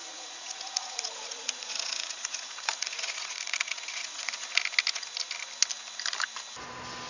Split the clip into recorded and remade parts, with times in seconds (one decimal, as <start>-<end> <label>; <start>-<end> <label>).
0.0-4.3 remade; 4.3-7.1 recorded